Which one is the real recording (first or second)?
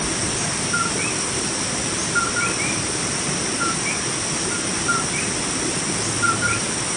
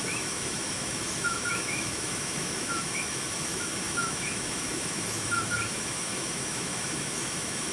first